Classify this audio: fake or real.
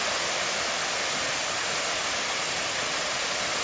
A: real